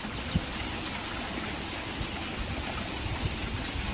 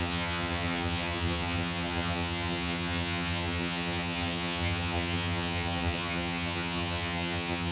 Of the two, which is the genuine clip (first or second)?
first